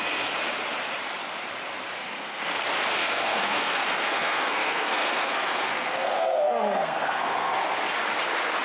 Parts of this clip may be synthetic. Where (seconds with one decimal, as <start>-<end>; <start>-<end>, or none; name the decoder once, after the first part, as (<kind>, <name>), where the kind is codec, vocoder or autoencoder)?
2.0-2.5 (codec, SNAC); 3.0-7.6